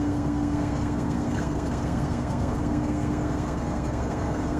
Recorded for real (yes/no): no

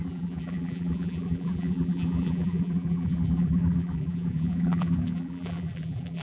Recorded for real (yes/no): no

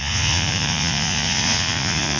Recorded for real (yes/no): no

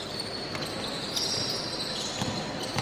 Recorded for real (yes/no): yes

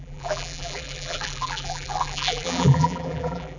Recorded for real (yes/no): no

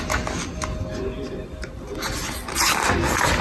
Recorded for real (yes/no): yes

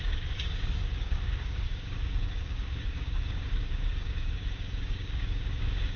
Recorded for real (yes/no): no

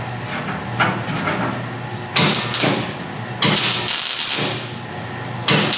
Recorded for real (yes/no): yes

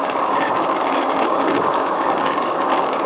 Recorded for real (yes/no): no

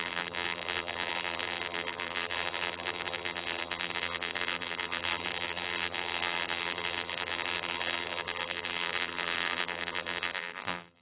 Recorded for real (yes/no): no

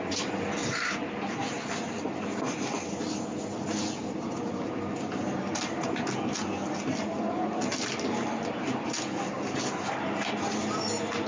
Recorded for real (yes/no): yes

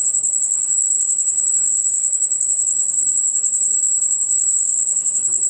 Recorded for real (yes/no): no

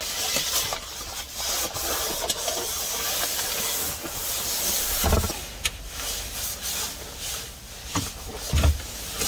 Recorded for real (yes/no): yes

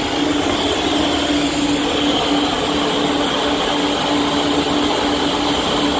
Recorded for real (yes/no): yes